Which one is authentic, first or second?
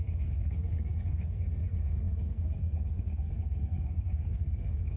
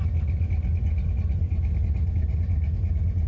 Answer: second